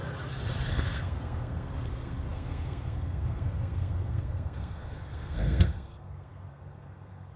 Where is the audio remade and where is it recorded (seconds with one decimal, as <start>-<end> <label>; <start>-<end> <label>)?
0.0-0.7 recorded; 0.7-7.4 remade